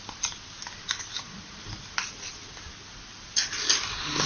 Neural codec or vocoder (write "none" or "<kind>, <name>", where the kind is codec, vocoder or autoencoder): none